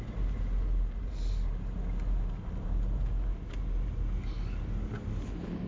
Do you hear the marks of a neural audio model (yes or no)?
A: no